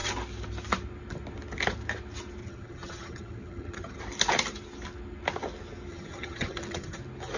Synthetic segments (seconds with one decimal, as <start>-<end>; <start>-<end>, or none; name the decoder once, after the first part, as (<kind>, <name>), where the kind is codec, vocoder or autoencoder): 2.4-4.0 (vocoder, HiFi-GAN); 5.9-7.0